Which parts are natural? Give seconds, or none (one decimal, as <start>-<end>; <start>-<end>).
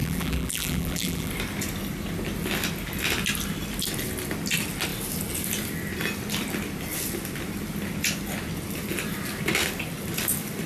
1.3-10.7